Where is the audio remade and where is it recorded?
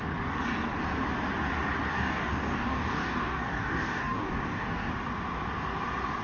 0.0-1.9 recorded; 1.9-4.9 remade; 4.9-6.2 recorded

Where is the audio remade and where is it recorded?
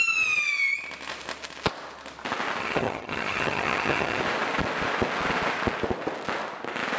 0.0-2.6 recorded; 2.6-4.2 remade; 4.2-7.0 recorded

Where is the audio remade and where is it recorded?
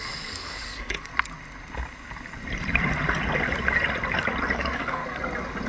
0.0-1.1 remade; 1.1-4.5 recorded; 4.5-5.0 remade; 5.0-5.7 recorded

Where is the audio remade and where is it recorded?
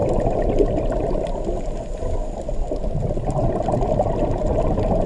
0.0-5.1 recorded